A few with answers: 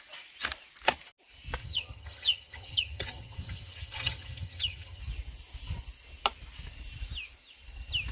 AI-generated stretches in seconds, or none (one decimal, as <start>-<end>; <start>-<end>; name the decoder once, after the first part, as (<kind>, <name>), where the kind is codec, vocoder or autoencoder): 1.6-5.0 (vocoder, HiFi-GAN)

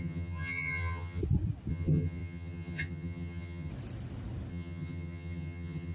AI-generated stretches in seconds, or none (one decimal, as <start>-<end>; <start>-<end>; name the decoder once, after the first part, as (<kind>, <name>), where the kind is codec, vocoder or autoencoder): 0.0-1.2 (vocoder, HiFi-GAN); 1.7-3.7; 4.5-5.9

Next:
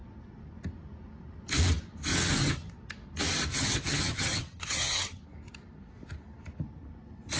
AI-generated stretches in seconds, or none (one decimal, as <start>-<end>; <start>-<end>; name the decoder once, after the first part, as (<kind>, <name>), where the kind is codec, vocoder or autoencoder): 2.1-2.7 (vocoder, HiFi-GAN); 3.5-5.2

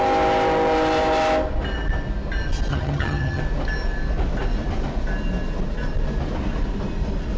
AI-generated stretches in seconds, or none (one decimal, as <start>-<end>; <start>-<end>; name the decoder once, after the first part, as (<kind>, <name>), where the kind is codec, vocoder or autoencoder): 2.7-3.4 (vocoder, HiFi-GAN)